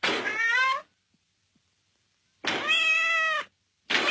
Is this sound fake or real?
real